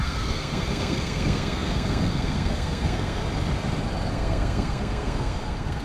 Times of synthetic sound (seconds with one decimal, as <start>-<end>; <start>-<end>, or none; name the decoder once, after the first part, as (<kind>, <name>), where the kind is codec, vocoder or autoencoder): 0.0-3.2 (codec, SNAC); 4.1-5.8